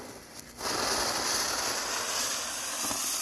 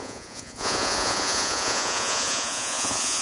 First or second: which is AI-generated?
second